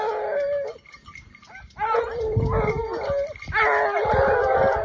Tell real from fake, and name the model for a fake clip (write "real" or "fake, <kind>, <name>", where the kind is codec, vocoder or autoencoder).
real